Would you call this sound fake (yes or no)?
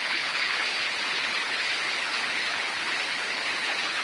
yes